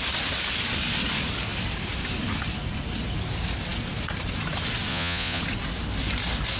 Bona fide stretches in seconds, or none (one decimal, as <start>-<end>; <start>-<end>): 0.0-4.9; 5.4-6.6